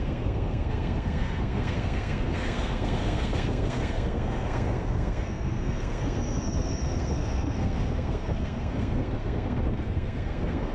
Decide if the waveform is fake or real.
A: fake